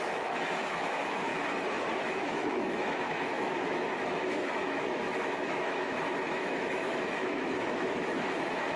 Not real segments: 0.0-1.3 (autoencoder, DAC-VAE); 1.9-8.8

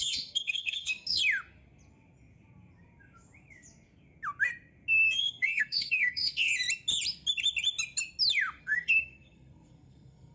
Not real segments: 0.0-1.2 (codec, SNAC); 5.2-6.5; 8.6-10.3

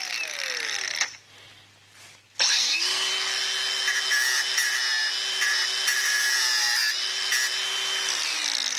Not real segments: 2.5-3.1 (codec, SNAC)

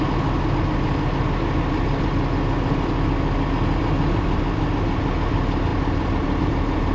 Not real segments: none

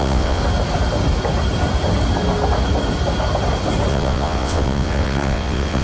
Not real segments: 0.0-0.4 (vocoder, WaveNeXt); 3.9-5.8

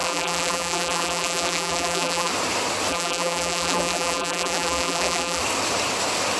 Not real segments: 0.0-2.3 (vocoder, BigVGAN v2); 2.9-5.4